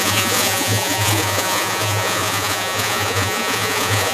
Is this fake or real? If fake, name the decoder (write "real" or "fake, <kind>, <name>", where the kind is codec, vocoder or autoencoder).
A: fake, vocoder, Vocos